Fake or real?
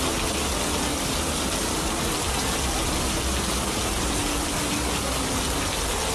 real